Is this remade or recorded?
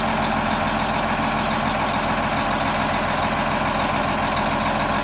recorded